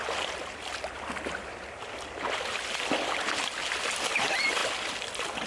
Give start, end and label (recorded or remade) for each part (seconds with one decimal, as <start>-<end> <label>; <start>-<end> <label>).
0.0-5.5 recorded